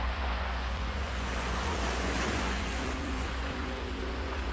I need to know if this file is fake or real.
fake